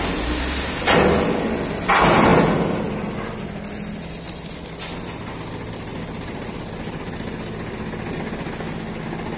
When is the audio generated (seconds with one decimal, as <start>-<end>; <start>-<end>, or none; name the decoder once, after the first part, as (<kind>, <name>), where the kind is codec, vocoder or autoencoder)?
5.9-6.6 (vocoder, BigVGAN v2)